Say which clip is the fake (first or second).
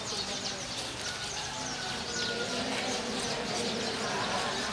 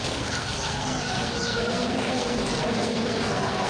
second